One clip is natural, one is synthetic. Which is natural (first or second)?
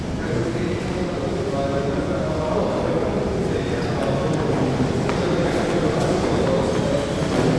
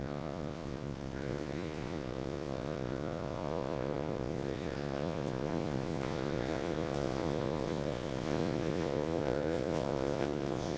first